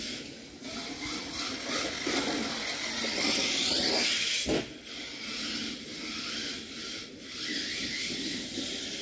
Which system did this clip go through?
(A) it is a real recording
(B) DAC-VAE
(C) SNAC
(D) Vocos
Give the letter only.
A